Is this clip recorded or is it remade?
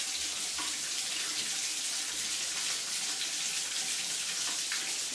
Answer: recorded